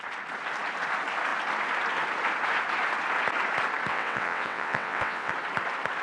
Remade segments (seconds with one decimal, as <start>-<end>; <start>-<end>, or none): 3.9-5.3